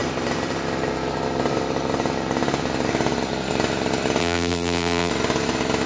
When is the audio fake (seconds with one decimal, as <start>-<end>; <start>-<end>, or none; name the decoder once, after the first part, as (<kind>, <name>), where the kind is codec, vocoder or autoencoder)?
4.2-5.1 (vocoder, BigVGAN v2)